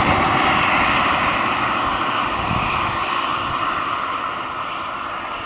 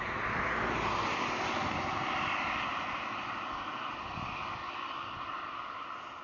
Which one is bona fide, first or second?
second